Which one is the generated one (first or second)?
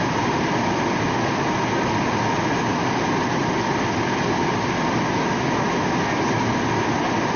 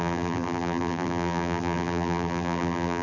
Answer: second